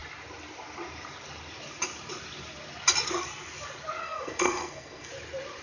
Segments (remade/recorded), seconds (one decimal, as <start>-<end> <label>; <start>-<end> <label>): 0.0-4.0 recorded; 4.0-5.1 remade; 5.1-5.6 recorded